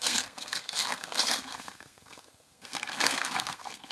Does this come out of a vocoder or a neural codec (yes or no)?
yes